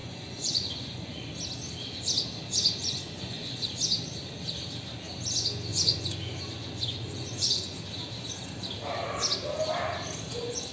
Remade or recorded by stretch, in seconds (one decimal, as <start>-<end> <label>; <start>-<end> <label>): 0.0-1.3 remade; 1.3-2.8 recorded; 2.8-3.8 remade; 3.8-5.7 recorded; 5.7-7.8 remade; 7.8-10.7 recorded